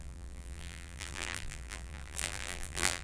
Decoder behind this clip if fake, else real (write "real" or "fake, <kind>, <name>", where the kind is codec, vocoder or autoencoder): fake, vocoder, BigVGAN v2